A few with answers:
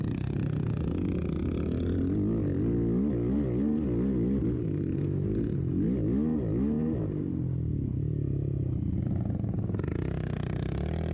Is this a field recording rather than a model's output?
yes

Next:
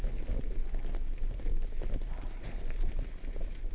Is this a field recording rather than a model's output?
yes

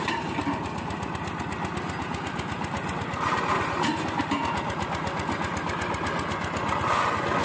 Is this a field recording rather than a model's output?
yes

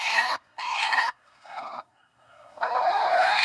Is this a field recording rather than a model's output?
no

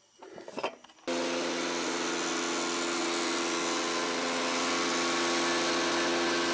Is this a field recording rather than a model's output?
yes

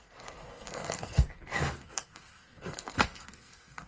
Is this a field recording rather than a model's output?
no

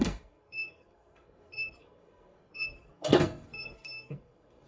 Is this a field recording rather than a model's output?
no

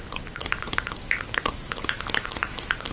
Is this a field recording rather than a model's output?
yes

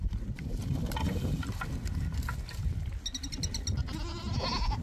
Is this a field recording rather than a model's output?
yes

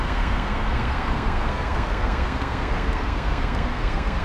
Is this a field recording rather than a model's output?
no